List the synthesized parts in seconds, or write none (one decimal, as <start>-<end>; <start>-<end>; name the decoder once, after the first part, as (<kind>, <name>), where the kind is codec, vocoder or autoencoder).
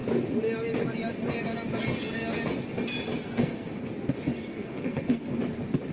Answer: 3.1-3.7 (codec, SNAC); 4.5-5.3